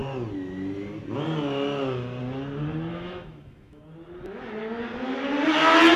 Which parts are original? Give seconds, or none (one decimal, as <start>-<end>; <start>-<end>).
0.0-2.9; 3.8-6.0